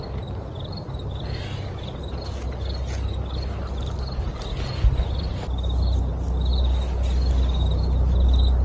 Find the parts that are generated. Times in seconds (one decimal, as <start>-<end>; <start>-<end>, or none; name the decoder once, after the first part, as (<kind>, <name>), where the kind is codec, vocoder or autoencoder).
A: none